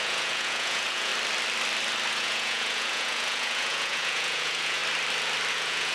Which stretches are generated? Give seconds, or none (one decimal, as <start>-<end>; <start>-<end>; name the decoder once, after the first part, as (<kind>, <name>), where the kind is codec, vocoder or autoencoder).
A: 0.0-1.1 (vocoder, Vocos); 2.1-4.8; 5.5-5.9